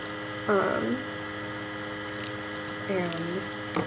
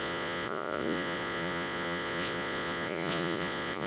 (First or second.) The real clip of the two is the first